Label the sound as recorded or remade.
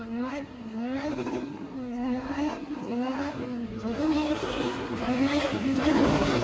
remade